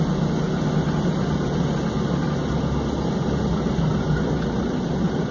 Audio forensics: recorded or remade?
recorded